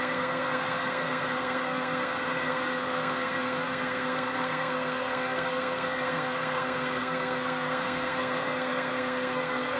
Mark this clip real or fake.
fake